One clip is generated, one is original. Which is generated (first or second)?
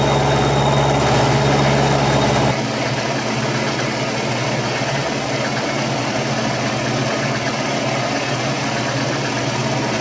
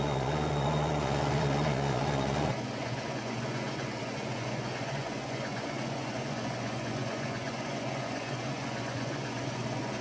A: second